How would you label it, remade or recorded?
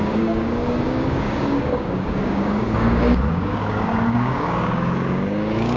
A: remade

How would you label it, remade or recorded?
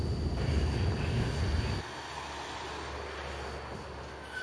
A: recorded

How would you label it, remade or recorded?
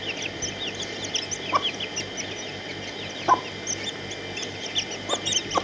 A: recorded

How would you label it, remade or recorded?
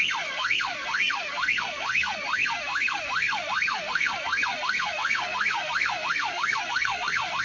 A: remade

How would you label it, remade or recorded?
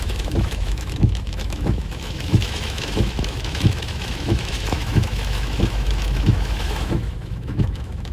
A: remade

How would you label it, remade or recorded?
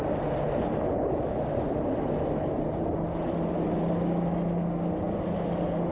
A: recorded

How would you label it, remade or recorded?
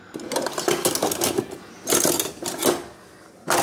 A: recorded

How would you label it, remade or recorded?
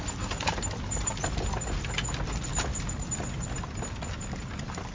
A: recorded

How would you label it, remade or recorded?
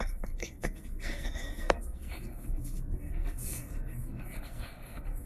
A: remade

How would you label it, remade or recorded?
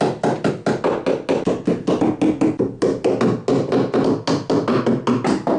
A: recorded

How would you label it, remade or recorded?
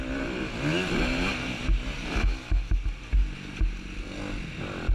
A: recorded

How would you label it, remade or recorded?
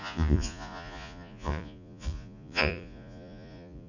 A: remade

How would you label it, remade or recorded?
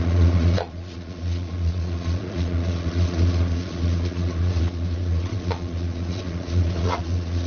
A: remade